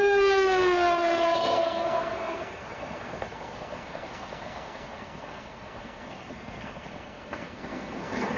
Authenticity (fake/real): fake